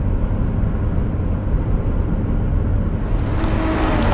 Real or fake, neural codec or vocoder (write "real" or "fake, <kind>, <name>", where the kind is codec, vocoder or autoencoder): real